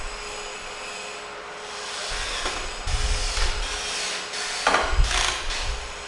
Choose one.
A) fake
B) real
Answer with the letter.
B